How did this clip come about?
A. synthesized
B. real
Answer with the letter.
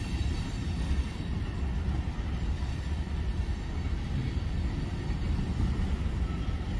B